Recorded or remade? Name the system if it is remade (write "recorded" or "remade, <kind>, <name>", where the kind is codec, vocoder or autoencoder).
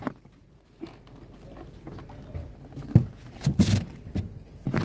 recorded